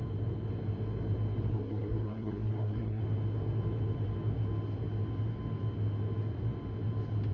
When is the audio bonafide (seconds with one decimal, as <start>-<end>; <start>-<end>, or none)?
0.0-1.5; 3.0-7.3